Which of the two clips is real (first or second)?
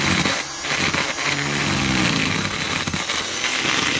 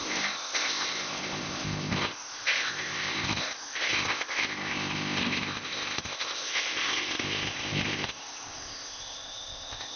first